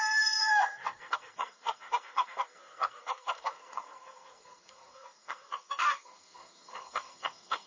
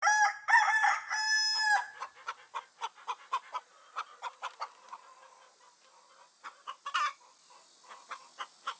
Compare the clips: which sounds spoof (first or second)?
first